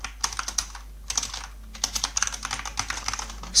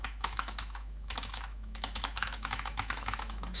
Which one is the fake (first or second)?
second